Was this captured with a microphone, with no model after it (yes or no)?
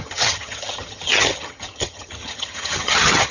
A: no